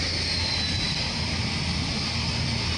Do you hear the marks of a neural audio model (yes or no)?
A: no